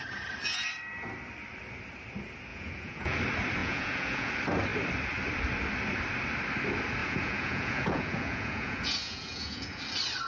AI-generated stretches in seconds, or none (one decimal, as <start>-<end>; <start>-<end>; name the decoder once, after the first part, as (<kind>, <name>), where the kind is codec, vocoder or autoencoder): 2.5-3.2 (vocoder, Vocos); 3.6-4.3; 7.0-9.8